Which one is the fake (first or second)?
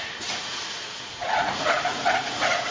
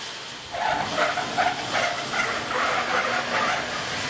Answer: first